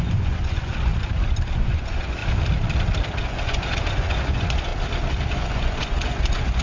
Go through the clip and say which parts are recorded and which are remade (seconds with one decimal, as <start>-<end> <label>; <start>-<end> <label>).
0.0-0.9 remade; 0.9-1.5 recorded; 1.5-2.2 remade; 2.2-3.2 recorded; 3.2-4.7 remade; 4.7-5.3 recorded; 5.3-6.6 remade